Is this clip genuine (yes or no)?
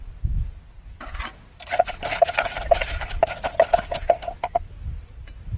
yes